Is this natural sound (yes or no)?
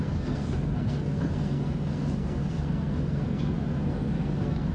no